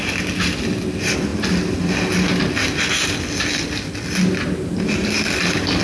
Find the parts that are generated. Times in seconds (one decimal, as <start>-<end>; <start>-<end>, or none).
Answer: none

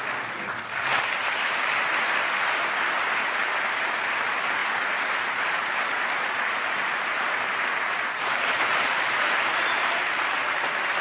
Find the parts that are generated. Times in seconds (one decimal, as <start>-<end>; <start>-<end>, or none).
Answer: 4.6-9.6

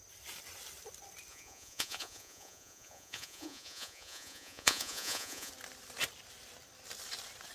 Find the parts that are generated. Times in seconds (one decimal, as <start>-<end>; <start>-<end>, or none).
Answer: 1.3-5.5

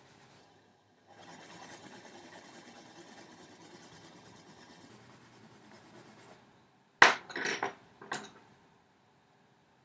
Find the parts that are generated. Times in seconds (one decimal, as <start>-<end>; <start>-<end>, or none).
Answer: 0.4-4.9

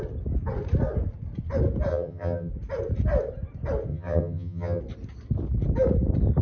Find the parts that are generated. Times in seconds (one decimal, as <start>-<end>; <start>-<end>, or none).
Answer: 1.9-2.5; 3.9-4.8

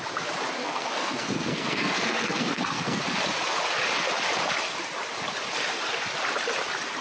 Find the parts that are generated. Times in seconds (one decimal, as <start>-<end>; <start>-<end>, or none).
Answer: 0.6-3.0